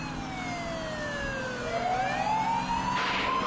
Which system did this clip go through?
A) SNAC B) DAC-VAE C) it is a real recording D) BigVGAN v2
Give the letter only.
C